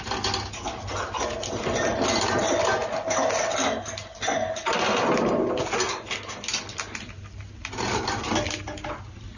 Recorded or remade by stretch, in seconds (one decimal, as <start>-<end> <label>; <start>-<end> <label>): 0.0-9.4 recorded